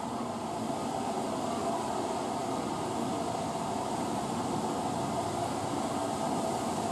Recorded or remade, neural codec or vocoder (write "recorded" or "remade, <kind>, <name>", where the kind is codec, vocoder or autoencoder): recorded